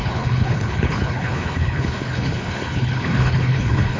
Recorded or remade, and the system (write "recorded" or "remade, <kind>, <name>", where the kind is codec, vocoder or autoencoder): remade, codec, HILCodec